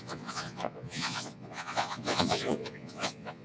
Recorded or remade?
remade